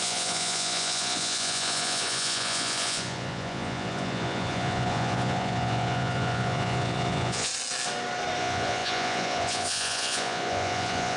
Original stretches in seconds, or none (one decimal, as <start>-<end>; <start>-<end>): 7.5-8.4